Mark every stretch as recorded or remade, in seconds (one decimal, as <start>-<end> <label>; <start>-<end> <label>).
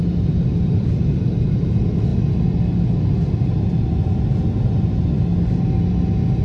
0.0-6.4 recorded